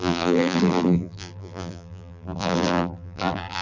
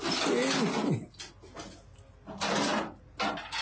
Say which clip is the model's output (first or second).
first